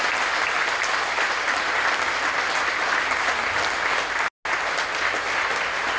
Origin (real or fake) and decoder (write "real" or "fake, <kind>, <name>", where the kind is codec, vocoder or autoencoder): real